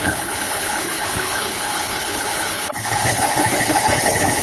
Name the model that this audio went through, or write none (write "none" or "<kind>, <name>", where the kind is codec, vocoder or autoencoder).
codec, HILCodec